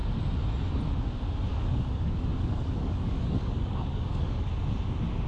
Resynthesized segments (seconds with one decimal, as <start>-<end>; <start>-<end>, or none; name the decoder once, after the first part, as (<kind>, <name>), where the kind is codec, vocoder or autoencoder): 1.5-4.5 (codec, DAC)